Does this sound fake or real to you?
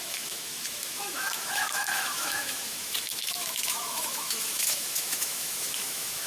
fake